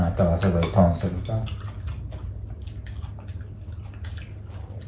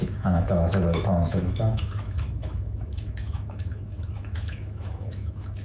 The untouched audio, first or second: first